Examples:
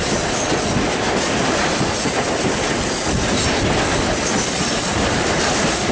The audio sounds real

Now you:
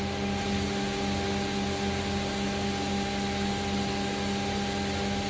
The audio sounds real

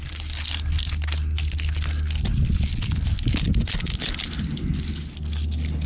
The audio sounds real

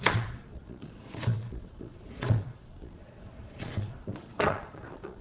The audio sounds fake